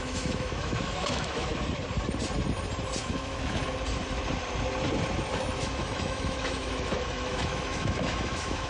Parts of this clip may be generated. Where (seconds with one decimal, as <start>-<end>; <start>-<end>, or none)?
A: 0.0-1.5; 3.0-3.6; 5.3-8.7